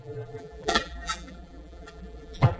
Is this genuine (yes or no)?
no